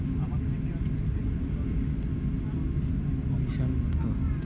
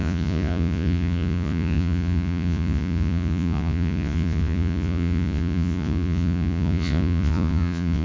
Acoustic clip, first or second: first